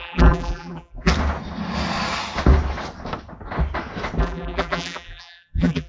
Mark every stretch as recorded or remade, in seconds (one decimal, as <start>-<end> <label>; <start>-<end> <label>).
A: 0.0-1.1 remade; 1.1-4.2 recorded; 4.2-5.9 remade